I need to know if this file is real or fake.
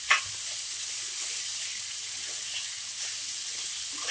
real